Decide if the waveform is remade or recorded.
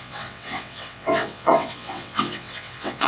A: remade